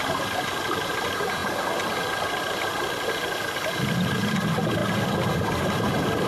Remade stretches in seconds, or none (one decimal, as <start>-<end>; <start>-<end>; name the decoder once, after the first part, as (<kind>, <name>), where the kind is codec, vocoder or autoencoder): none